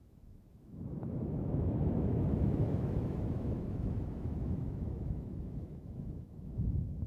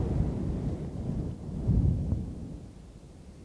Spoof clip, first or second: first